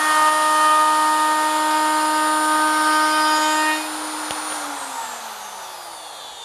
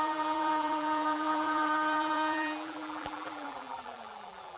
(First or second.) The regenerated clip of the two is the second